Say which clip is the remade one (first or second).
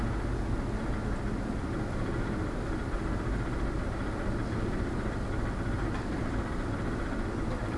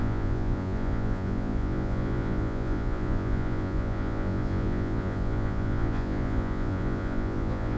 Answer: second